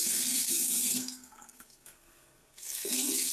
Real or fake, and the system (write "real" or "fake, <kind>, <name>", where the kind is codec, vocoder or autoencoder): fake, codec, SNAC